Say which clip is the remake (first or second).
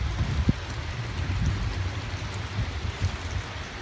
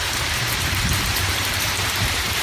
second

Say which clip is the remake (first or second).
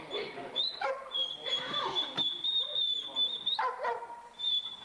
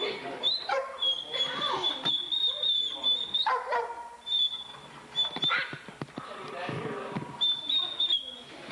first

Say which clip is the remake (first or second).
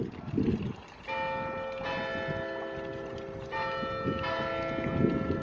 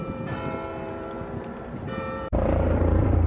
second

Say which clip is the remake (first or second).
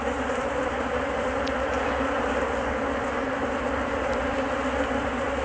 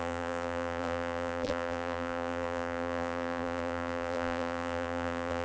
second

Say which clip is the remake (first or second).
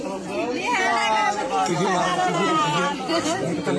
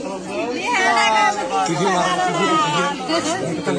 first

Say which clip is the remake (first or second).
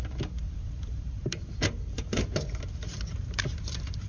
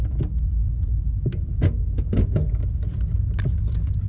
first